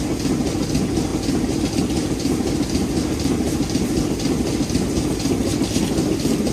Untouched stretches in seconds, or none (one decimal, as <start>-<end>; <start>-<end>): 0.0-6.5